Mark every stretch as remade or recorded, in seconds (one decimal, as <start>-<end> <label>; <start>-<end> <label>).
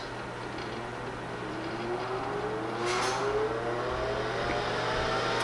0.0-5.4 recorded